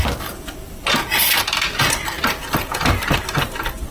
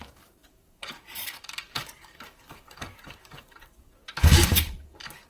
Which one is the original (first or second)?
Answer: first